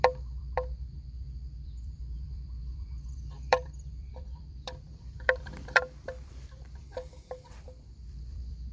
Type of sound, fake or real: fake